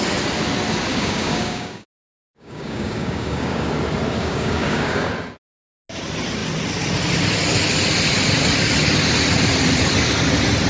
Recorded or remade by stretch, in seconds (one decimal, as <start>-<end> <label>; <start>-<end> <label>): 0.0-0.9 recorded; 0.9-3.7 remade; 3.7-4.2 recorded; 4.2-5.1 remade; 5.1-10.7 recorded